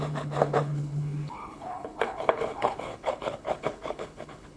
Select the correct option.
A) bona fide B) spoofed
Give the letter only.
B